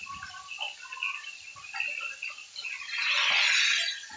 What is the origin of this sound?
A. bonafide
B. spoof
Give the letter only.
A